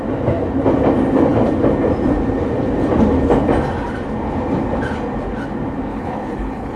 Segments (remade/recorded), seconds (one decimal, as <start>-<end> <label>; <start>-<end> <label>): 0.0-5.9 recorded; 5.9-6.8 remade